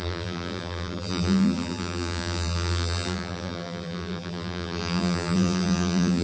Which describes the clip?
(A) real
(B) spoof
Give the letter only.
B